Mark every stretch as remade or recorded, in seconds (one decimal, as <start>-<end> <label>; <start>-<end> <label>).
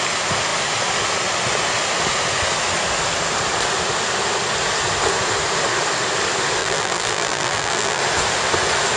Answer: 0.0-6.6 recorded; 6.6-8.0 remade; 8.0-9.0 recorded